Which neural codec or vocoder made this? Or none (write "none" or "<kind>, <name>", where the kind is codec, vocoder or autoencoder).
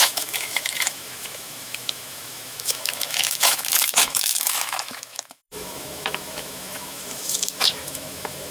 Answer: autoencoder, DAC-VAE